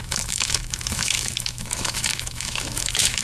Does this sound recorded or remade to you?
remade